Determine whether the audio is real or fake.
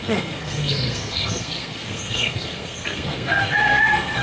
fake